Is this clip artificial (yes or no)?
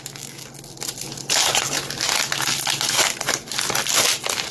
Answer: no